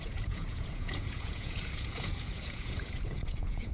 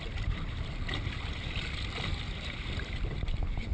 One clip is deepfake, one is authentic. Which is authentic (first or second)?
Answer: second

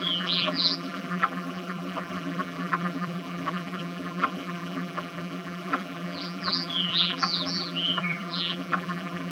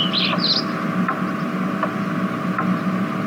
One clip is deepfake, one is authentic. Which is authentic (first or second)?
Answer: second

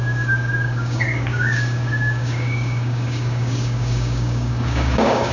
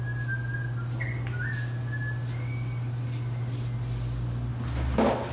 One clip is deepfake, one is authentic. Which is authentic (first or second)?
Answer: second